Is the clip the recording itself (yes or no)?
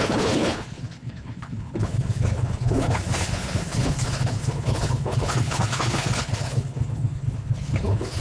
no